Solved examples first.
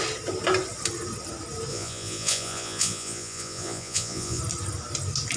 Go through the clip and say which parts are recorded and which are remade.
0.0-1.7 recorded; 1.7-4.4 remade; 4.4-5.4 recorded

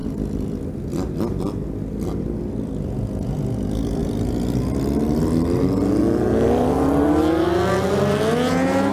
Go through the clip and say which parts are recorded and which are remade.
0.0-8.9 recorded